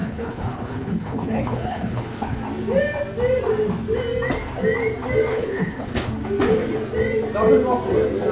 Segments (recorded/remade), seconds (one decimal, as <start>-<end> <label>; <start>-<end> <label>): 0.0-2.4 remade; 2.4-5.3 recorded; 5.3-6.1 remade; 6.1-8.3 recorded